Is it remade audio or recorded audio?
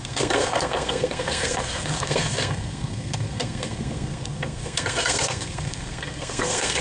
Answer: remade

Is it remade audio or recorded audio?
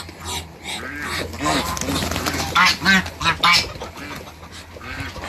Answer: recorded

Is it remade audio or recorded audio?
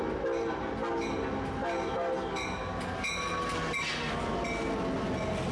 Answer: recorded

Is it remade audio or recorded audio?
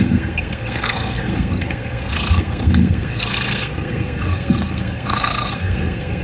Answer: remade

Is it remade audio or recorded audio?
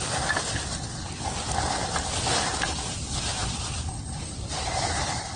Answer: recorded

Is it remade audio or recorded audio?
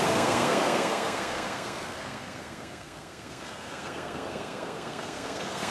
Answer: remade